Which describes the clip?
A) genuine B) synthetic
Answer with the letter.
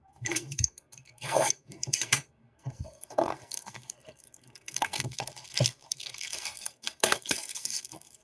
B